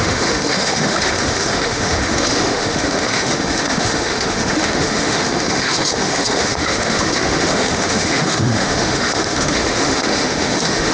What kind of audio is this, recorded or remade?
remade